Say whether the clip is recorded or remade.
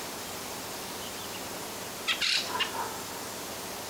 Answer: recorded